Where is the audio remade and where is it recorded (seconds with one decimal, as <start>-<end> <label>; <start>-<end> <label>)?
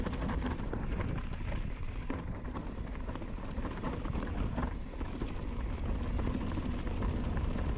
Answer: 0.0-2.6 recorded; 2.6-3.8 remade; 3.8-7.8 recorded